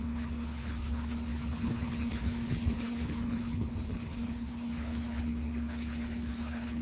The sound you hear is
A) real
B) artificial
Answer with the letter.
B